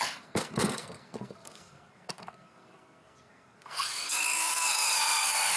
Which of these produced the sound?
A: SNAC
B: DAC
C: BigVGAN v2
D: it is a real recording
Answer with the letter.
A